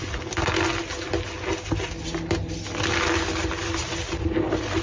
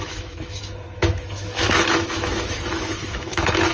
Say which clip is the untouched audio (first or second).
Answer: first